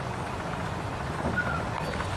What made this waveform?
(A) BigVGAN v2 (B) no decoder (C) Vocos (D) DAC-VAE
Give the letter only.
C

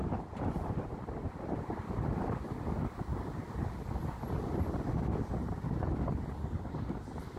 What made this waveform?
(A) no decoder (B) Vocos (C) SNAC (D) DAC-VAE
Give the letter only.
A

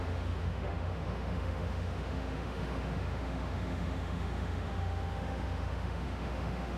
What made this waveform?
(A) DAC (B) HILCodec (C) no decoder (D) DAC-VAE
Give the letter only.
D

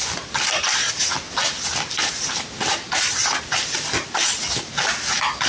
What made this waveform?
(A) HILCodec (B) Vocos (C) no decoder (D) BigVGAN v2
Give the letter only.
C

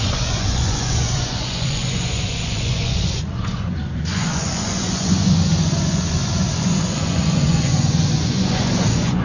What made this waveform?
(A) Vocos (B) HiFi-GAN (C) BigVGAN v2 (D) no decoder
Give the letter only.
A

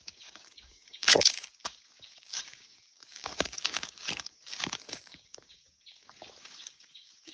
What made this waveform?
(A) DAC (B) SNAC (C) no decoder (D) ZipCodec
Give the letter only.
A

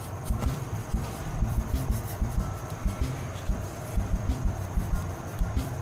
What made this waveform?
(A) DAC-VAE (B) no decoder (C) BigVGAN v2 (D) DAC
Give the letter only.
C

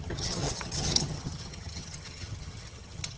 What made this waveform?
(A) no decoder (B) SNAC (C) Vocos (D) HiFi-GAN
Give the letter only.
D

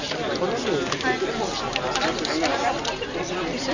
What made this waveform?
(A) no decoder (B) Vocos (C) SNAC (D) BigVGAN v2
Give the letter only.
A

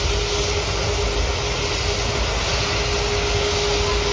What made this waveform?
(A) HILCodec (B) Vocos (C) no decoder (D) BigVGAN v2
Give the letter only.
C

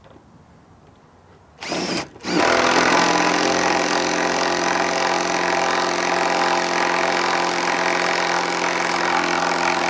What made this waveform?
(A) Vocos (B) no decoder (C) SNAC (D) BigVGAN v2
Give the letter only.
B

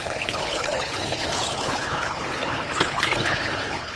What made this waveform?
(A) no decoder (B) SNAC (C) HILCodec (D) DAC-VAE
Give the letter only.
C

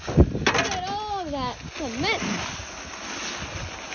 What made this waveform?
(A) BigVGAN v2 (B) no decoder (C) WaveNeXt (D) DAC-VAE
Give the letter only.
B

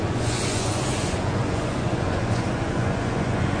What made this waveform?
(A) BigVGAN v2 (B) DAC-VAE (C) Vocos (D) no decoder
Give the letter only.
C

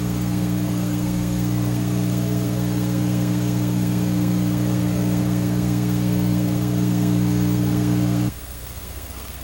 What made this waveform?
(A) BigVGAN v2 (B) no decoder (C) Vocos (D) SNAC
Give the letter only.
D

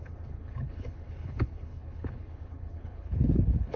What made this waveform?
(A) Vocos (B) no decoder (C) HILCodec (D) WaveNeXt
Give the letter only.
C